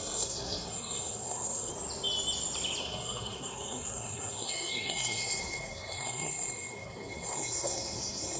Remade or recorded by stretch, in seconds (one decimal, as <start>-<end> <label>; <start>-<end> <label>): 0.0-1.7 remade; 1.7-2.8 recorded; 2.8-8.4 remade